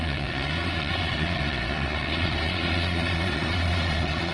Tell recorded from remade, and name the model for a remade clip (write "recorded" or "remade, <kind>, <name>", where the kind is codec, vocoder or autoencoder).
remade, vocoder, Vocos